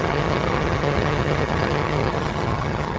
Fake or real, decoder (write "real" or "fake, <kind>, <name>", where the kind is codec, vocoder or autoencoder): fake, vocoder, HiFi-GAN